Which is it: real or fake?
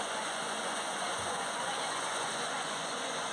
fake